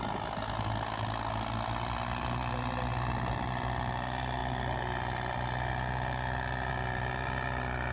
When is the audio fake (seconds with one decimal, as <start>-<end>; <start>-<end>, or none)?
none